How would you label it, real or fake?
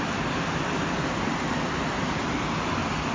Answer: real